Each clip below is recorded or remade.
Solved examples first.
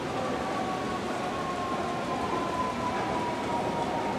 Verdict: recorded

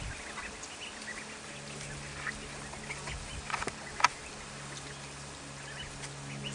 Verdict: recorded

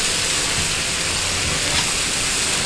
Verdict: recorded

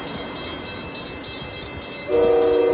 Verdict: recorded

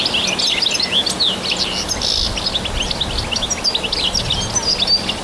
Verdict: recorded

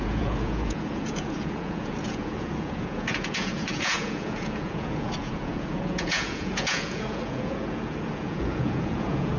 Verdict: remade